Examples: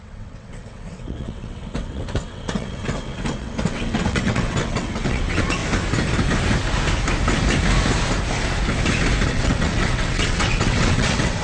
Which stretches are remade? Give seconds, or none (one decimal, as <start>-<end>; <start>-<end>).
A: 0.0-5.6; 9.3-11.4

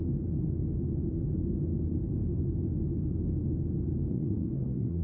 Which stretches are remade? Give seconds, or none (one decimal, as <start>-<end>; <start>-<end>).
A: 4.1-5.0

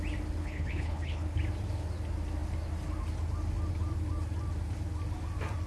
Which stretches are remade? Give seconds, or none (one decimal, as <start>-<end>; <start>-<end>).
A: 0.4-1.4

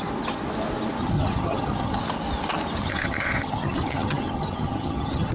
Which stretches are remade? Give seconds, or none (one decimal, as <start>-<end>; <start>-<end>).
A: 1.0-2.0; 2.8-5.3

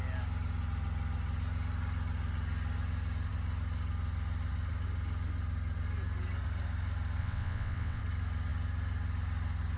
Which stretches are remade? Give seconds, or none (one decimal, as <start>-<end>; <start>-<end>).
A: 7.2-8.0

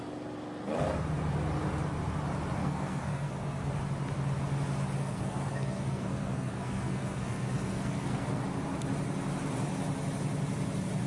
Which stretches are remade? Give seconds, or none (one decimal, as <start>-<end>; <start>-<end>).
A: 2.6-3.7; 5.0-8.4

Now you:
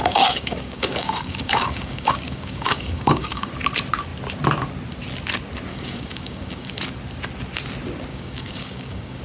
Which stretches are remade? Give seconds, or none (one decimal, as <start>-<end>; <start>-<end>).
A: 0.0-3.5; 5.7-6.8; 8.1-9.2

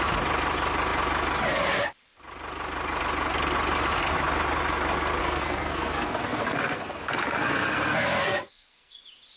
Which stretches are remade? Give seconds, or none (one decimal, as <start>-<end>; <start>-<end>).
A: 5.2-9.0